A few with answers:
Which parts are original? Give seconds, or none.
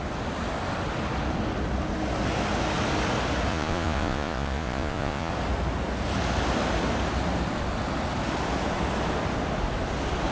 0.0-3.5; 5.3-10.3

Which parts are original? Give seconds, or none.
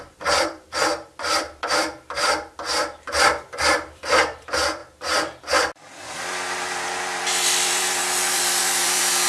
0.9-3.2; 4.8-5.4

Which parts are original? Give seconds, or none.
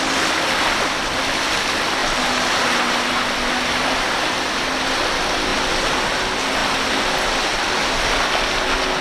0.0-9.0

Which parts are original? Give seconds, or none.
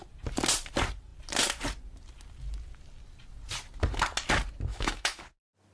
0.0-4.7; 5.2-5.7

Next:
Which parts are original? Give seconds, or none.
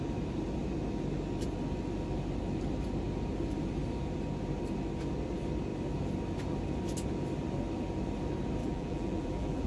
0.0-8.6